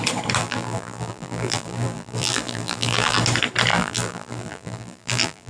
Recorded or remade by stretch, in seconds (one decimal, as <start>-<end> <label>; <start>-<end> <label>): 0.0-0.4 recorded; 0.4-3.2 remade; 3.2-3.7 recorded; 3.7-5.5 remade